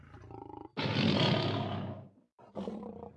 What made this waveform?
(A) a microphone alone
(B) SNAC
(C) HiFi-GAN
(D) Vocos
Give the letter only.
A